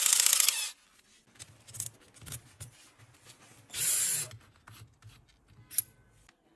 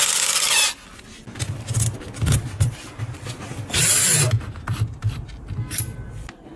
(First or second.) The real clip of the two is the first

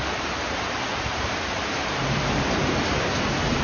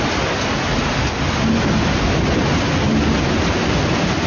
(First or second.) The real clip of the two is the second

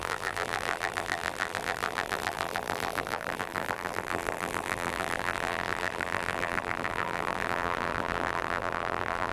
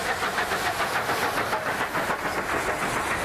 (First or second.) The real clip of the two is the second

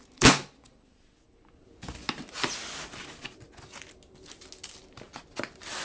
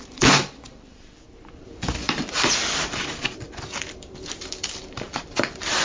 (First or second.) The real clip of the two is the first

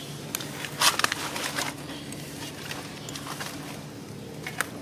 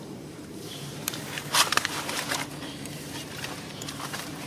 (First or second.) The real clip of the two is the first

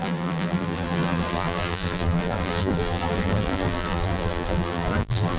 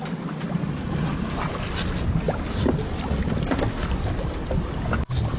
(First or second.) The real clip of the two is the second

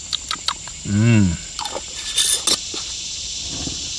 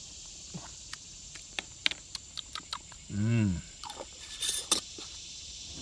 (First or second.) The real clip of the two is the first